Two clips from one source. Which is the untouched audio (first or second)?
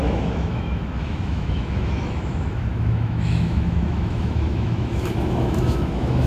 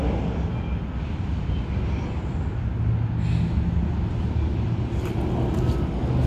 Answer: second